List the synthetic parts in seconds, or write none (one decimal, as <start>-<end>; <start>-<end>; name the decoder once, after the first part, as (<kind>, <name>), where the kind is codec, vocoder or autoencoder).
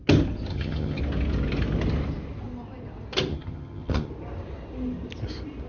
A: 0.5-1.0 (vocoder, HiFi-GAN); 3.3-4.1